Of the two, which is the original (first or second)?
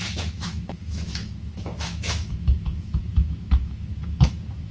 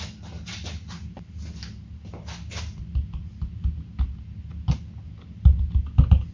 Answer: second